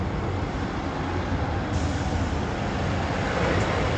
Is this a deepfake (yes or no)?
yes